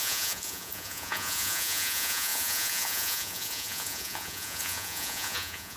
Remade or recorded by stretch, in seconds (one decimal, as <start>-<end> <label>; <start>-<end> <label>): 0.0-5.8 remade